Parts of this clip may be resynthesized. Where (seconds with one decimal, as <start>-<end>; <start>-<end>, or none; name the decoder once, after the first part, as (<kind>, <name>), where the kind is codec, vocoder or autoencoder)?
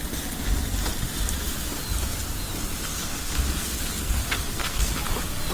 2.9-4.9 (codec, SNAC)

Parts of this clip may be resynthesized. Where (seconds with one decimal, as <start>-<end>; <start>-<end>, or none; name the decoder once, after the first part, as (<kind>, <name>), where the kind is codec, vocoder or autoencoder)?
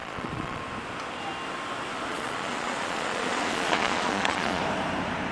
0.0-0.6 (vocoder, Vocos); 2.1-4.6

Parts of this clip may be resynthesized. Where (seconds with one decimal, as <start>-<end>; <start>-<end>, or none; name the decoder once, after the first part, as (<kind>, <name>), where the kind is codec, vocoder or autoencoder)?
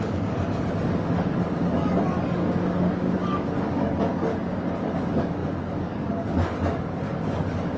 0.0-4.3 (codec, DAC); 4.8-7.8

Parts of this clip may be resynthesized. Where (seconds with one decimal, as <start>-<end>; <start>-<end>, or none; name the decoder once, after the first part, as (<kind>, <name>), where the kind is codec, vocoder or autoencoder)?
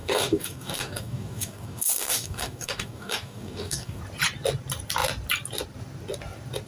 0.0-4.0 (codec, DAC)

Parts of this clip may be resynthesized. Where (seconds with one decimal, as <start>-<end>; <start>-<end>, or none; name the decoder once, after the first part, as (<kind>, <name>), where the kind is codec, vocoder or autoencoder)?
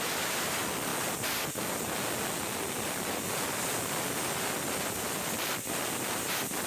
none